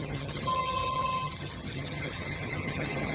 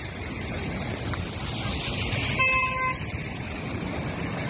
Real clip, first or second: second